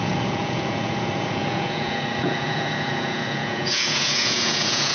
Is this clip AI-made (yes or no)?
yes